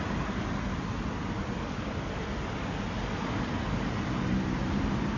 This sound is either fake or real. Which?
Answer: real